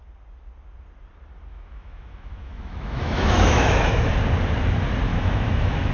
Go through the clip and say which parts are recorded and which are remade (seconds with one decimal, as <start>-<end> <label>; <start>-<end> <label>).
0.0-1.5 recorded; 1.5-4.1 remade; 4.1-5.1 recorded; 5.1-5.9 remade